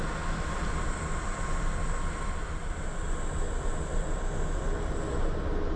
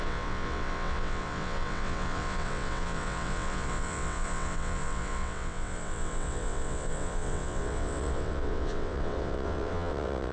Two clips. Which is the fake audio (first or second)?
second